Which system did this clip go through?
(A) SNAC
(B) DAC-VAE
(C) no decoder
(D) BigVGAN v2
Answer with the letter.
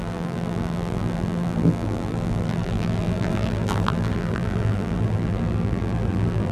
D